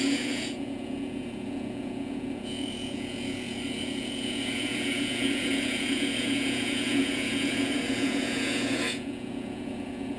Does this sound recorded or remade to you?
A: remade